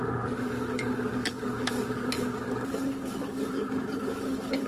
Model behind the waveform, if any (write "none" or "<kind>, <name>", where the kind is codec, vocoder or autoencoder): codec, DAC